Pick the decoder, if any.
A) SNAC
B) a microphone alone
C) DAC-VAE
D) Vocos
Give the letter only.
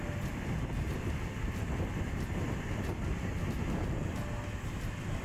B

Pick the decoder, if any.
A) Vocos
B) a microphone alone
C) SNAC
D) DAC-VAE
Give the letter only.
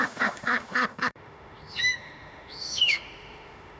D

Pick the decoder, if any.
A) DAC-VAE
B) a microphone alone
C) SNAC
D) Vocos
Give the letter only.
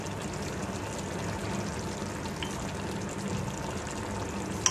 B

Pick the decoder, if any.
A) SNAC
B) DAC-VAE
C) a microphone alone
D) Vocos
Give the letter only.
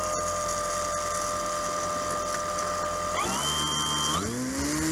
C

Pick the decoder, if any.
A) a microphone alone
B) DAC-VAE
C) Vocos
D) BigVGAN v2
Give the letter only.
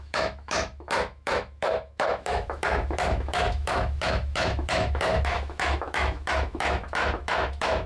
B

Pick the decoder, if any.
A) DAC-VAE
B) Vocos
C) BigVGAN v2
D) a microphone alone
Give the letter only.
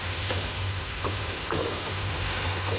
A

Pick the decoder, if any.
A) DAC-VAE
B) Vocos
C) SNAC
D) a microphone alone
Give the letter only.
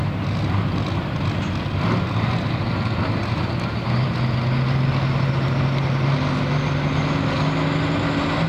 D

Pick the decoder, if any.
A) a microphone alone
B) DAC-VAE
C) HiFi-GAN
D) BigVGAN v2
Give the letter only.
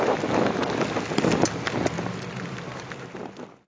A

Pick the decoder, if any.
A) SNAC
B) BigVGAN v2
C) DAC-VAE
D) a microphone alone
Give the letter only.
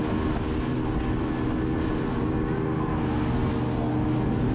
D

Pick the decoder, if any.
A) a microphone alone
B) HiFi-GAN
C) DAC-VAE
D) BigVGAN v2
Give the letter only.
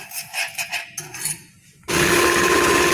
A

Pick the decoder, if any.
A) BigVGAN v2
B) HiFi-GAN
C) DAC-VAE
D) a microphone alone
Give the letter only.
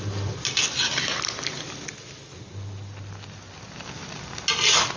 D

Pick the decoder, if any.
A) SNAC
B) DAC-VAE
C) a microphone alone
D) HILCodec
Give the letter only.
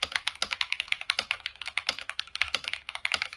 B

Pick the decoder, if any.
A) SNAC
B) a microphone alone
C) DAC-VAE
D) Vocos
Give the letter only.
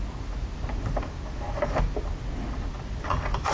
B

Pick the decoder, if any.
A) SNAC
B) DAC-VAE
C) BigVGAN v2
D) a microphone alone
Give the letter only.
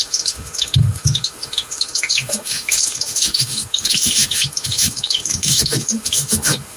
B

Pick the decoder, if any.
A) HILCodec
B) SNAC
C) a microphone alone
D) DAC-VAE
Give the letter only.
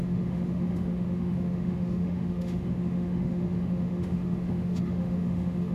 D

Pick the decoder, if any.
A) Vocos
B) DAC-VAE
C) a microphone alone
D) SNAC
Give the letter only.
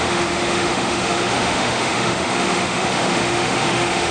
B